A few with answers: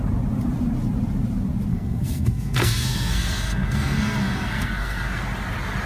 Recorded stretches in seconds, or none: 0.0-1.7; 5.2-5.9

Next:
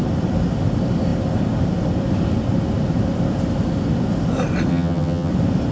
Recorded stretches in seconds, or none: 0.0-4.7; 5.3-5.7

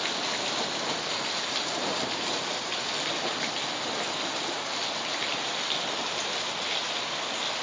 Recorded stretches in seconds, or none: 0.0-7.6

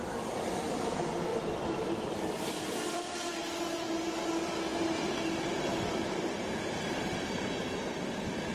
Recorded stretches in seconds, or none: 0.0-1.3; 3.9-4.7; 6.8-8.5

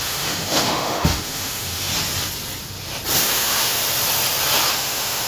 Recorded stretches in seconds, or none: 1.9-3.2; 3.8-4.7